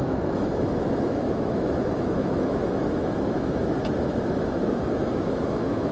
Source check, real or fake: fake